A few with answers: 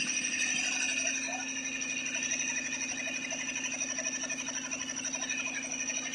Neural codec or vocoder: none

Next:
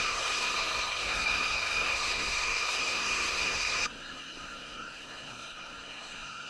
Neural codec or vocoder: codec, SNAC